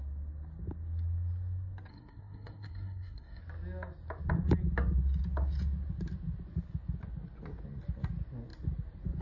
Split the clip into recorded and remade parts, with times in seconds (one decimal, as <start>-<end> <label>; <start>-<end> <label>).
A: 0.0-1.9 recorded; 1.9-3.4 remade; 3.4-9.2 recorded